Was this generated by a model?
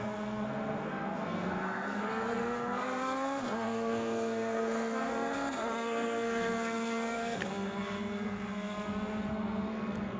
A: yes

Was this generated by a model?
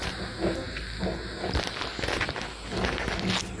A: no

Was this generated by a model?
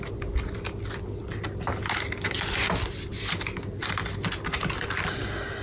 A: no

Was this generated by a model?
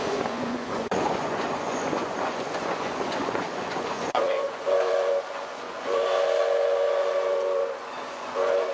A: yes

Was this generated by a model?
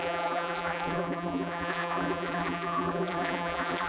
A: yes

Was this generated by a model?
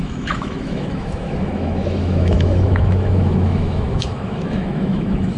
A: yes